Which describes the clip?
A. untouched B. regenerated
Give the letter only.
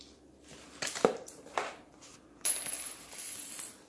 A